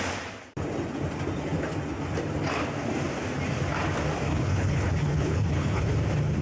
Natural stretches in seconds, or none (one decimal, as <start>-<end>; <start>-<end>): 0.0-4.3; 5.8-6.4